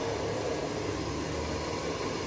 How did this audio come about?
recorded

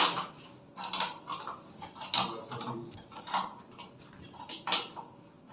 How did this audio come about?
recorded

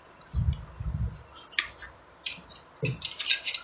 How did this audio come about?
recorded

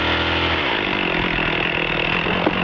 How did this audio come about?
recorded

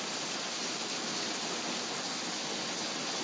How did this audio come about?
recorded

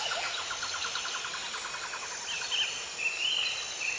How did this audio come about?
recorded